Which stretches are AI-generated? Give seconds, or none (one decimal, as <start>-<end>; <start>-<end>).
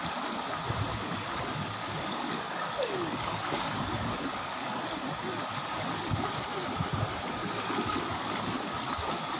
0.9-4.8; 7.4-9.4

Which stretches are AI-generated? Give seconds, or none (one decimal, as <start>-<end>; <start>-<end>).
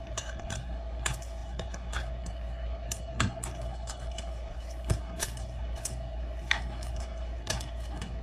0.0-8.2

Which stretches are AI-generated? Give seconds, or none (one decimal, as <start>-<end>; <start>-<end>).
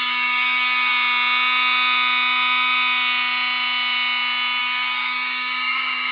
0.0-0.9; 4.6-6.1